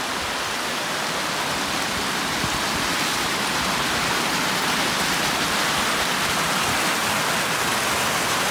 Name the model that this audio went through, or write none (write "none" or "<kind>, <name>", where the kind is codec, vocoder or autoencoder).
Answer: none